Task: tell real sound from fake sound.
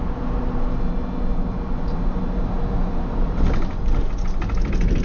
real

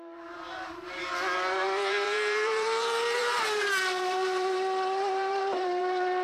fake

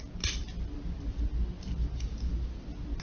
real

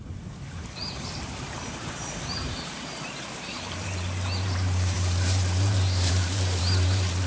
fake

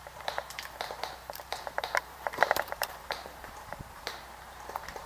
fake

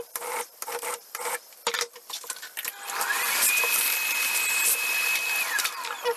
fake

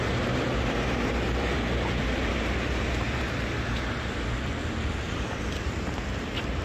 fake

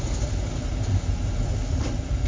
real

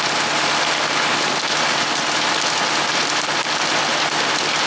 real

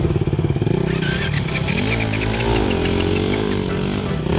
real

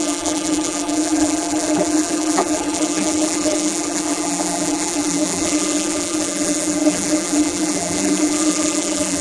fake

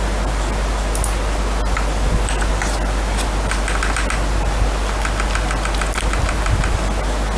real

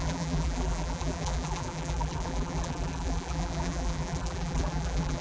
fake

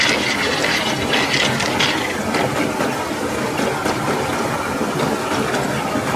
real